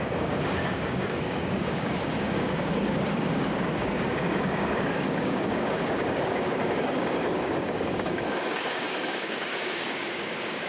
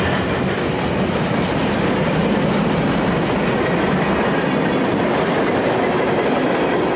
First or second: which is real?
second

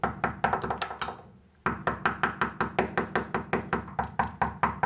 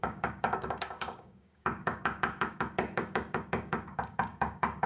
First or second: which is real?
first